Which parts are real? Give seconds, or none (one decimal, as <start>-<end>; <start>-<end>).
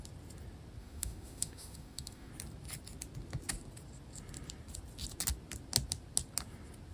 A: 0.0-0.8; 2.3-6.9